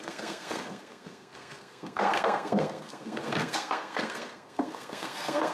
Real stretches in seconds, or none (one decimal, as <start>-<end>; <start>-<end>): none